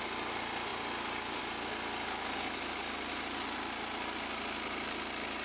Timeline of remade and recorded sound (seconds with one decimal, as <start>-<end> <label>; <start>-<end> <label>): 0.0-0.7 recorded; 0.7-1.4 remade; 1.4-5.4 recorded